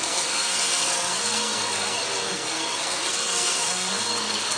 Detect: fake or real fake